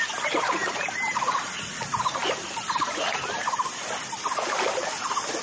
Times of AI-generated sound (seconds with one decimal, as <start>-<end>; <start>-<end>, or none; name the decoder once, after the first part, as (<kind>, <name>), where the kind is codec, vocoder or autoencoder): 0.6-1.5 (vocoder, BigVGAN v2)